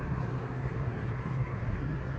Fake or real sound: fake